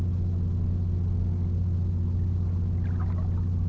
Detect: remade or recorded recorded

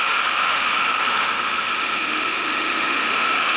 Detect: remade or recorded remade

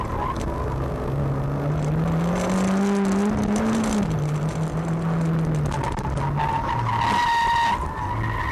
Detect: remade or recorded recorded